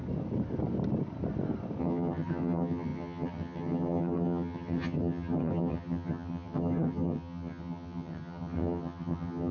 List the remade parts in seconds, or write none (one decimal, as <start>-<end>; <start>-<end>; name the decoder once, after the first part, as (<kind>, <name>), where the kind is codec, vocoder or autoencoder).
1.8-9.5 (vocoder, HiFi-GAN)